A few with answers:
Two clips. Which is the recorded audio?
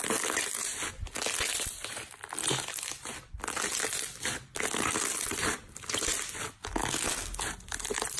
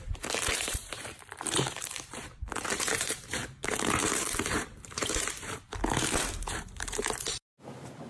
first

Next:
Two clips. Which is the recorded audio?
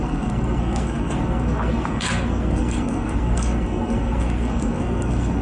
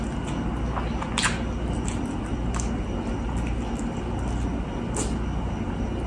second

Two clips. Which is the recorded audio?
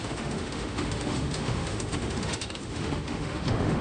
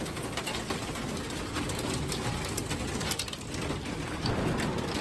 second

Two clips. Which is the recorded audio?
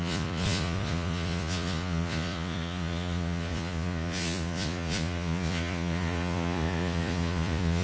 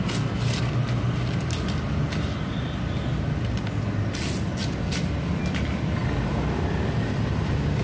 second